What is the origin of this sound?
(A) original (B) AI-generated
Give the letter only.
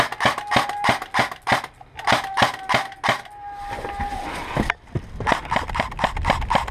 A